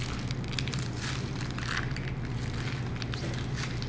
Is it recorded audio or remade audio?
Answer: recorded